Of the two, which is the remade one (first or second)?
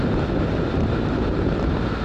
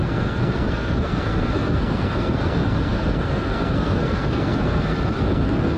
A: second